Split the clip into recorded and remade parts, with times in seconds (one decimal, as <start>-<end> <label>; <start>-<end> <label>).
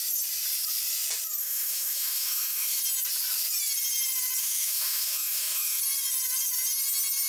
0.0-1.4 recorded; 1.4-2.8 remade; 2.8-4.4 recorded; 4.4-5.8 remade; 5.8-7.3 recorded